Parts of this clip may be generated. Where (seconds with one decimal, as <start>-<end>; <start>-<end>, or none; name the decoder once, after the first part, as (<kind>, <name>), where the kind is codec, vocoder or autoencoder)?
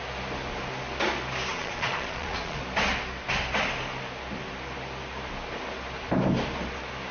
1.5-2.6 (vocoder, Vocos)